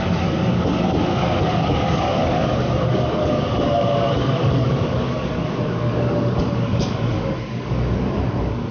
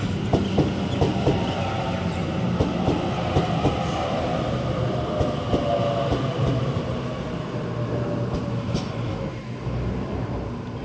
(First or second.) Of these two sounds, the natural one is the second